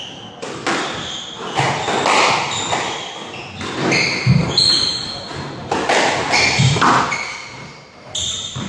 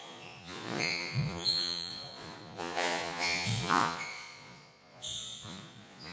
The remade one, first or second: second